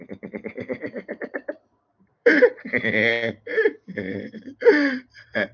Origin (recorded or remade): remade